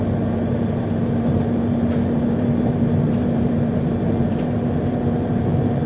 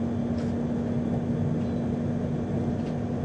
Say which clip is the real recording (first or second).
second